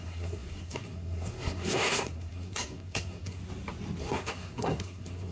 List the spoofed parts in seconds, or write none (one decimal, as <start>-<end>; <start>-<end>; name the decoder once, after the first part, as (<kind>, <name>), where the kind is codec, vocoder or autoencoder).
0.0-3.4 (codec, SNAC); 4.0-5.3